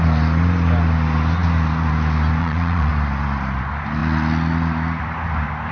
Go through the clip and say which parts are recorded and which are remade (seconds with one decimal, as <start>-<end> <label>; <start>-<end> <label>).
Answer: 0.0-2.4 recorded; 2.4-2.9 remade; 2.9-5.7 recorded